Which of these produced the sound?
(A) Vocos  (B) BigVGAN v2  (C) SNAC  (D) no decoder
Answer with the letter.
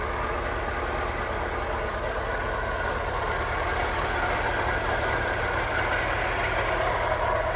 D